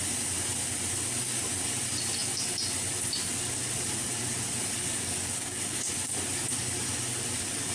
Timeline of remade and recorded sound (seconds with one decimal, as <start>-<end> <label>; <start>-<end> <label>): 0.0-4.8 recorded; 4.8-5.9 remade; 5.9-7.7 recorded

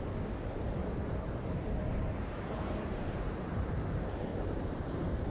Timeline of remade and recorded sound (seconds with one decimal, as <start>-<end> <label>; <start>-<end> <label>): 0.0-0.8 recorded; 0.8-3.7 remade; 3.7-4.3 recorded; 4.3-5.3 remade

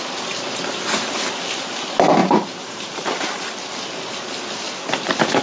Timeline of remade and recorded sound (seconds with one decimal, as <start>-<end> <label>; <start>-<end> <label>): 0.0-2.2 recorded; 2.2-3.2 remade; 3.2-5.4 recorded

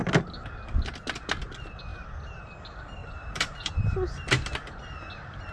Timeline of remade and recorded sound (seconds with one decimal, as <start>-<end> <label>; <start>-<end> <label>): 0.0-3.0 recorded; 3.0-3.7 remade; 3.7-5.5 recorded

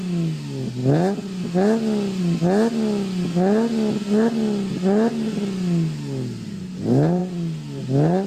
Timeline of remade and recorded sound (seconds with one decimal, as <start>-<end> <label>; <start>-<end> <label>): 0.0-8.3 recorded

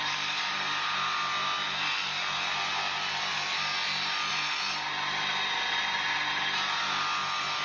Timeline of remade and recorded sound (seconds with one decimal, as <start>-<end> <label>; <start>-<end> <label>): 0.0-7.6 recorded

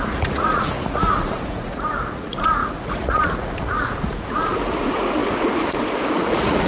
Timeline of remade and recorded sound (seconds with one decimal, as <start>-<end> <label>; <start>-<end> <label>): 0.0-6.7 remade